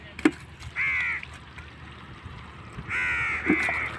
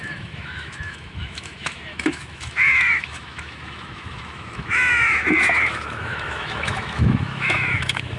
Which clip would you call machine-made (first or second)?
second